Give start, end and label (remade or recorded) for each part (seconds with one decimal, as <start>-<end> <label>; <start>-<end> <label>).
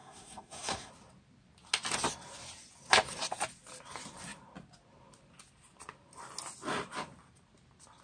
0.0-0.9 remade; 0.9-8.0 recorded